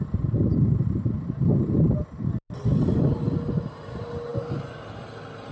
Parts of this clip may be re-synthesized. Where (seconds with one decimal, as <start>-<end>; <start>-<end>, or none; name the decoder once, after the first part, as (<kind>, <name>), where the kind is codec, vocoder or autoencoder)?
none